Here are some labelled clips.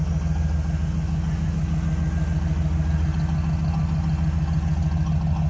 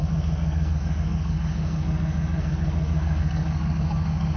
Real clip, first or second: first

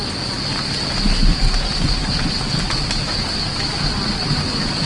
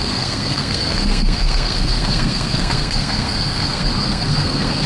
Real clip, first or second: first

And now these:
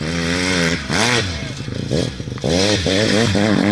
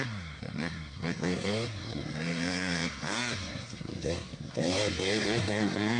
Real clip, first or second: first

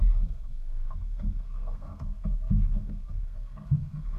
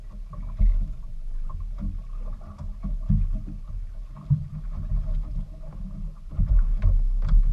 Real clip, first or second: second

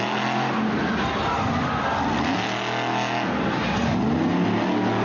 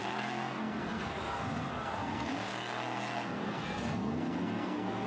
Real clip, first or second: first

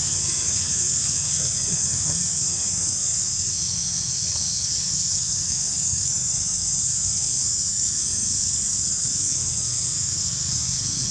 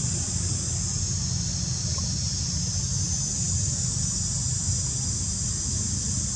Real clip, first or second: second